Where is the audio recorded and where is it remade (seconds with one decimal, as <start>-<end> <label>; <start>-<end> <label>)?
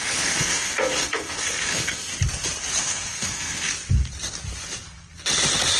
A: 0.0-2.1 remade; 2.1-2.8 recorded; 2.8-3.7 remade; 3.7-5.8 recorded